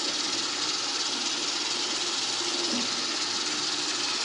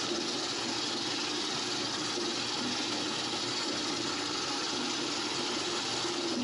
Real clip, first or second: second